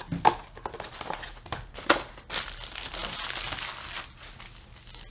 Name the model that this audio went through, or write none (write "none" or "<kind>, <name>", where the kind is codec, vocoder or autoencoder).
none